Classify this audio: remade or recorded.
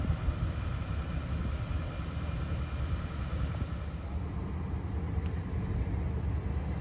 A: recorded